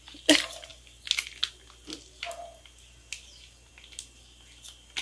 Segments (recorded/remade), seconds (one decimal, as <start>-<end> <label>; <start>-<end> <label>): 0.0-5.0 recorded